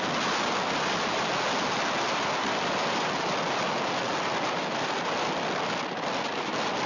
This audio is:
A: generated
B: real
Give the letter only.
B